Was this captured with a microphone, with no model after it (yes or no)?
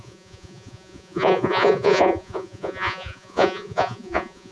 no